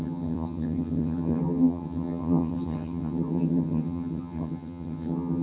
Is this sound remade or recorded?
remade